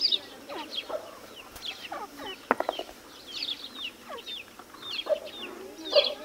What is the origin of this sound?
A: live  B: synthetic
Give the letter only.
A